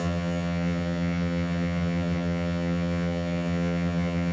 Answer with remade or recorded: remade